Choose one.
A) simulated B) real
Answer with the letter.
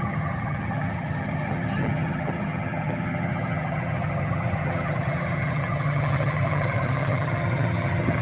A